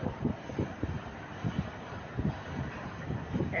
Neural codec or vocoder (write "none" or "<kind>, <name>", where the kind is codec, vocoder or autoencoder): vocoder, BigVGAN v2